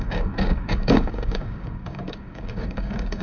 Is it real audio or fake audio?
fake